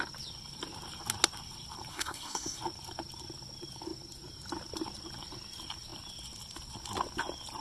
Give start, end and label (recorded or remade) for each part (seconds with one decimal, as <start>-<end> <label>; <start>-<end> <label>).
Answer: 0.0-1.9 recorded; 1.9-2.6 remade; 2.6-7.6 recorded